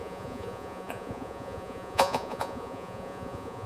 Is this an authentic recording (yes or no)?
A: no